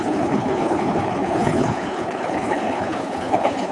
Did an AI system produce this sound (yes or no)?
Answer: yes